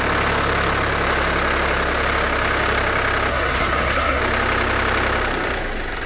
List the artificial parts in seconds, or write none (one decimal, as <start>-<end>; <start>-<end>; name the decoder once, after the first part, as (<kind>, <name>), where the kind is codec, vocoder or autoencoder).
3.3-4.2 (codec, SNAC)